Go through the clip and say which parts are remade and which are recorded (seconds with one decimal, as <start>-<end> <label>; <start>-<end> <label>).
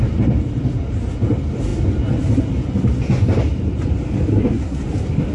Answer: 0.0-4.3 recorded; 4.3-4.8 remade; 4.8-5.3 recorded